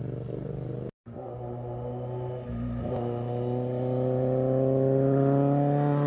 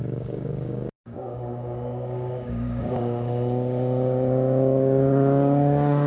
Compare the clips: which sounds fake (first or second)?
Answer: second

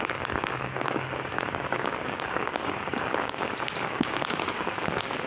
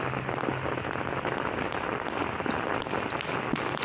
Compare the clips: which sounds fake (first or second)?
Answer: first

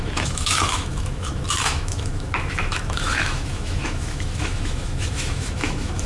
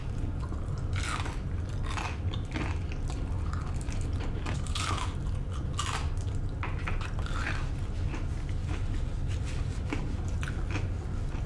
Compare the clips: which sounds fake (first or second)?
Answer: first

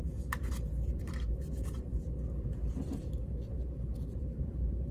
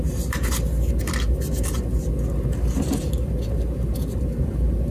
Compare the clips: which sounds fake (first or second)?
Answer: first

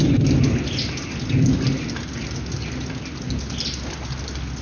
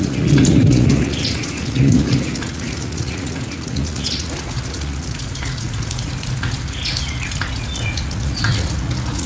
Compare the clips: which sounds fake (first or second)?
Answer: second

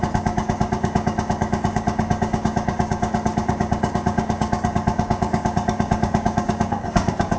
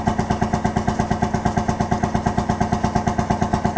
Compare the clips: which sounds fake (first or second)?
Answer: first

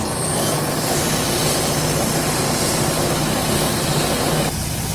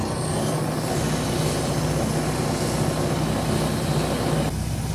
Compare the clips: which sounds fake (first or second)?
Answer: first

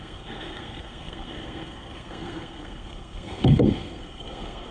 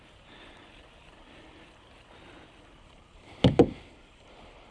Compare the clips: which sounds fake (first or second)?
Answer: first